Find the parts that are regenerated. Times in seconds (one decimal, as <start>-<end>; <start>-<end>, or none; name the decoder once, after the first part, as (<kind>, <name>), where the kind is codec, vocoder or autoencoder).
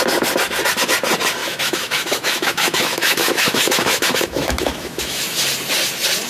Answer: 1.4-5.2 (autoencoder, DAC-VAE)